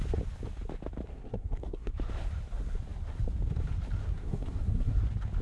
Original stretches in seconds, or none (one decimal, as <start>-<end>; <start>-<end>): 0.0-1.1; 1.9-4.0; 5.0-5.4